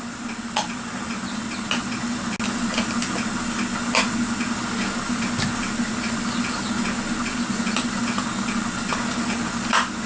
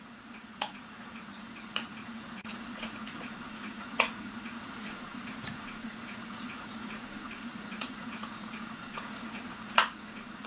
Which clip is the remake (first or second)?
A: second